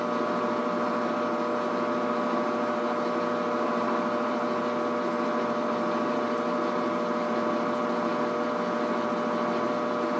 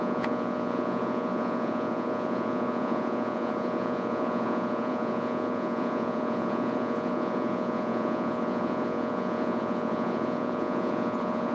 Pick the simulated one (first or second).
second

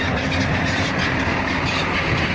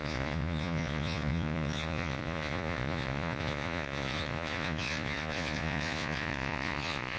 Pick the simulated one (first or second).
second